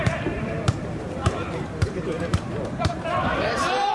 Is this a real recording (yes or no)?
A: no